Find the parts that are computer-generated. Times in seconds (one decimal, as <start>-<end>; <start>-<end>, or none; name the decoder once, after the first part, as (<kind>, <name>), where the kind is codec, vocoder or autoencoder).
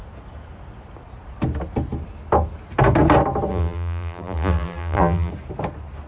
3.5-5.3 (vocoder, BigVGAN v2)